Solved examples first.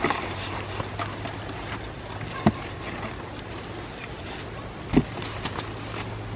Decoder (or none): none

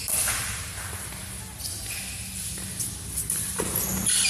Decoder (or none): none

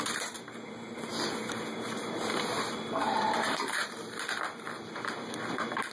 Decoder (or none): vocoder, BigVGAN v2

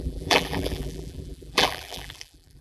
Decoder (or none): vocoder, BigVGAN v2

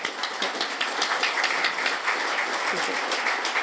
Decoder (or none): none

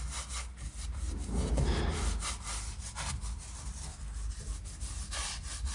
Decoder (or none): none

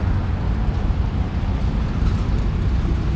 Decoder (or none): none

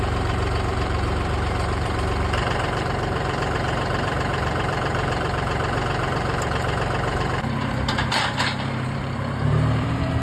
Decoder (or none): vocoder, BigVGAN v2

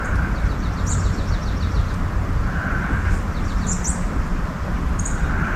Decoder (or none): none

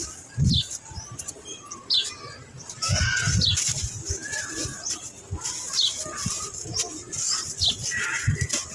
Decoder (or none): none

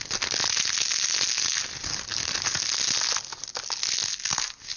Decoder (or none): none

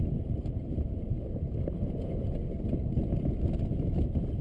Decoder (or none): none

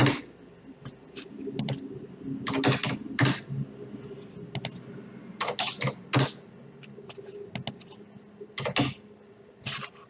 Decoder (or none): none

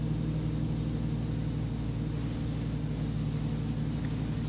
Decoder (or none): none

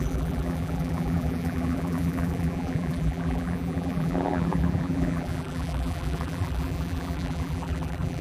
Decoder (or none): vocoder, BigVGAN v2